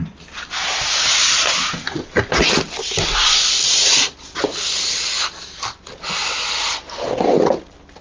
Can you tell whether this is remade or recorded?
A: recorded